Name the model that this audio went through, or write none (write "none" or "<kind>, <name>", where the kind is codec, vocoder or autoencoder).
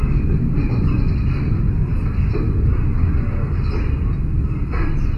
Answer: none